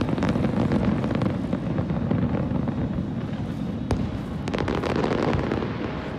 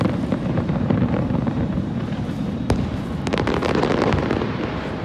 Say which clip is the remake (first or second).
second